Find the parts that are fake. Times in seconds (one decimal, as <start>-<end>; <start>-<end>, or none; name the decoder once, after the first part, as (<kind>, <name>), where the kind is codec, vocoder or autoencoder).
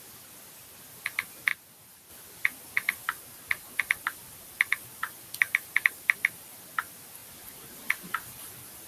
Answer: 3.0-4.7 (vocoder, BigVGAN v2); 7.2-8.4